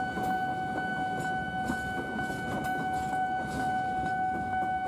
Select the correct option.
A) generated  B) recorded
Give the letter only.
B